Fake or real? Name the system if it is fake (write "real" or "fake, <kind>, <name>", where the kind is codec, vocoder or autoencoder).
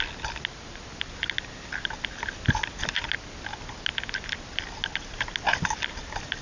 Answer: real